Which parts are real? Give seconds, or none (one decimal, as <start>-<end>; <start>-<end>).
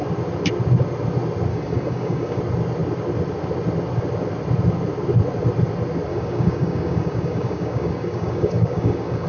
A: 0.0-1.5; 2.4-6.1